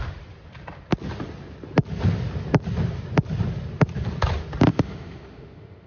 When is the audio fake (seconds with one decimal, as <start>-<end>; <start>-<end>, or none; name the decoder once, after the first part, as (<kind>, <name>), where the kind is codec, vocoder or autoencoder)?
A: 4.7-5.9 (autoencoder, DAC-VAE)